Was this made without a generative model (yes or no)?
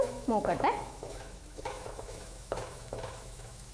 no